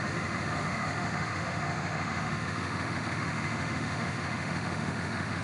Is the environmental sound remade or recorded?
remade